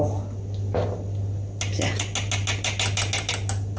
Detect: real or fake real